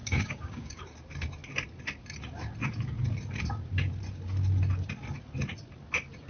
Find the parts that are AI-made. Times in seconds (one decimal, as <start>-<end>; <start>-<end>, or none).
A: 0.0-0.8